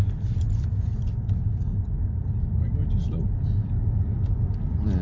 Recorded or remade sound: recorded